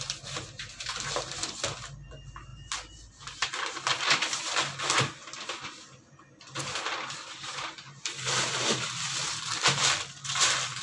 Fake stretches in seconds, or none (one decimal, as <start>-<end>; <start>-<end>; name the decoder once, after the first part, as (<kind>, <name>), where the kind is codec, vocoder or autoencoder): none